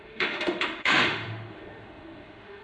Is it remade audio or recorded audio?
remade